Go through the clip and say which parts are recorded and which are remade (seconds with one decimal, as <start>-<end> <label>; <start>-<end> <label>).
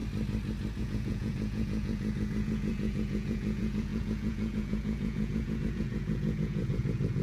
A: 0.0-0.8 recorded; 0.8-7.2 remade